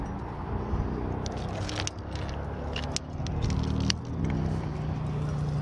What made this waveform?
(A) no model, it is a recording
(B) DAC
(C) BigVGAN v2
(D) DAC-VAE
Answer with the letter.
A